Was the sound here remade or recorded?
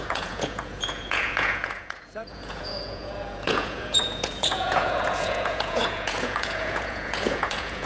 remade